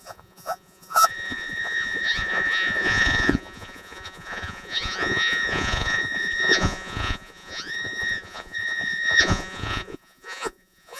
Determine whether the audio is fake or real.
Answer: fake